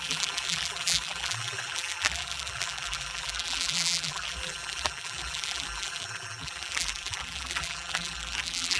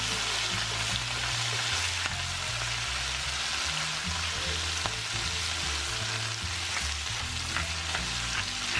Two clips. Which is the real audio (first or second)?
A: second